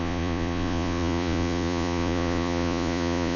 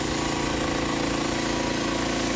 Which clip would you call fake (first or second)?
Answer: first